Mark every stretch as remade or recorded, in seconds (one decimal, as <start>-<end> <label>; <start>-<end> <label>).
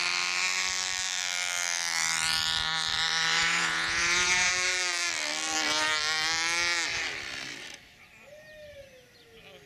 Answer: 0.0-3.4 recorded; 3.4-4.5 remade; 4.5-9.7 recorded